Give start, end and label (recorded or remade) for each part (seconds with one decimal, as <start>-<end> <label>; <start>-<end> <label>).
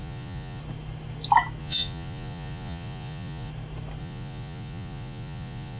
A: 0.0-0.6 remade; 0.6-1.6 recorded; 1.6-3.5 remade; 3.5-4.0 recorded; 4.0-5.8 remade